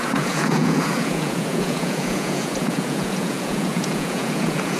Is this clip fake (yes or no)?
yes